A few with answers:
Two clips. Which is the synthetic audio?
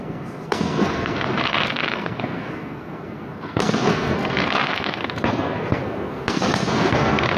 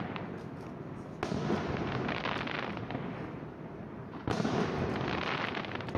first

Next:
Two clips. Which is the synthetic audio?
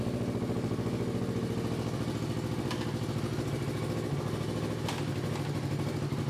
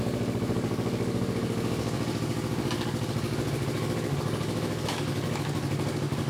second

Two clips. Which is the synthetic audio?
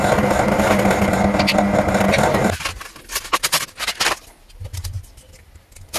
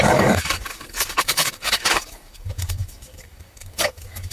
second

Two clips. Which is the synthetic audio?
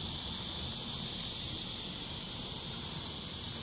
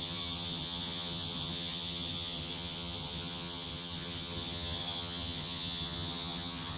second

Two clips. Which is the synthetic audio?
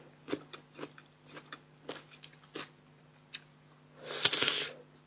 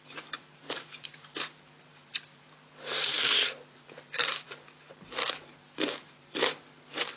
second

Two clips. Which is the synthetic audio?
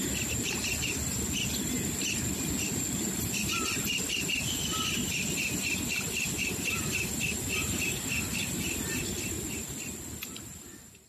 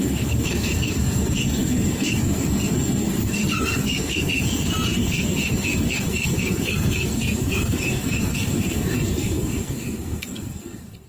second